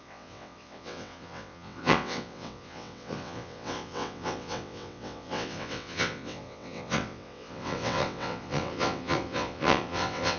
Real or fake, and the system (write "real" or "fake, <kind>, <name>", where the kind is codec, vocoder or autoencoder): fake, vocoder, WaveNeXt